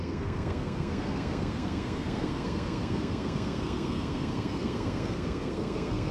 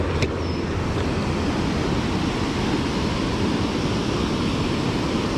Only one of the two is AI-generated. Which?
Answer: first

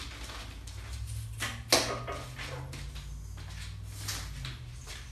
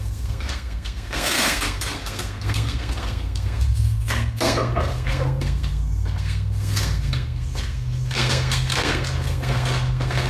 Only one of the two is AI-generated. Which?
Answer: second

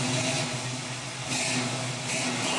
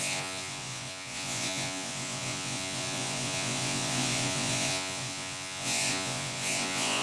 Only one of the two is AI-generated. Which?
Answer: second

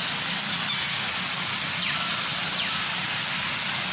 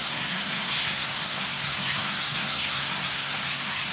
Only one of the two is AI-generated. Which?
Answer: second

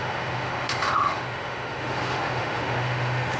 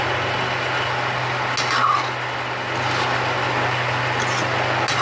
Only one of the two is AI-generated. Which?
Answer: first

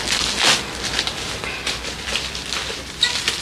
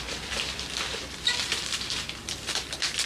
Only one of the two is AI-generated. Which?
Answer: second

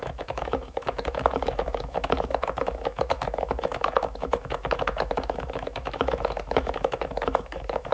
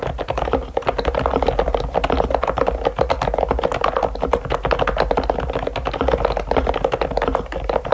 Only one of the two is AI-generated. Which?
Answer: first